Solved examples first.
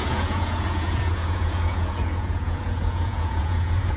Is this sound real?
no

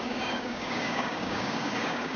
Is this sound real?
no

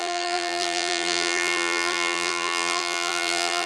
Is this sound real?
no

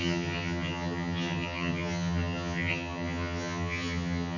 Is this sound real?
no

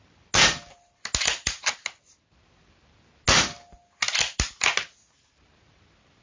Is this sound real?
yes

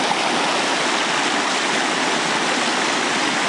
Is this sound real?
yes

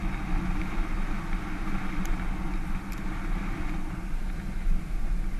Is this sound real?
yes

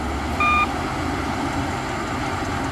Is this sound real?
yes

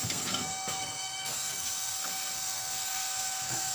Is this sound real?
no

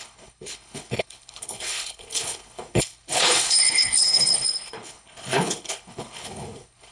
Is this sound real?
no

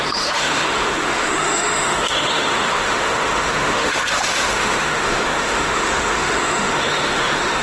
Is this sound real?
no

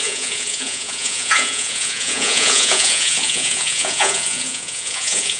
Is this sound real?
no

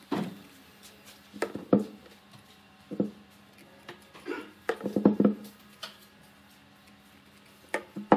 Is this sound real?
yes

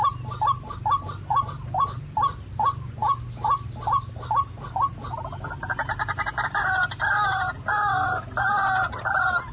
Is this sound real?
yes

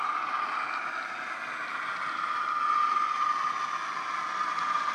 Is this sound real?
yes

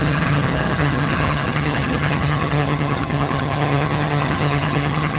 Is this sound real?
no